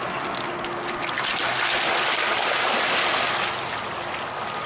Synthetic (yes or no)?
no